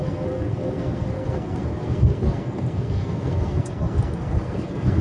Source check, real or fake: fake